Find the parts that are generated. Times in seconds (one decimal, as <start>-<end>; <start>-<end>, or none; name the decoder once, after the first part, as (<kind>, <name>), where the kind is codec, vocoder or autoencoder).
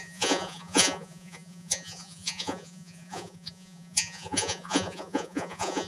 0.0-5.9 (vocoder, Vocos)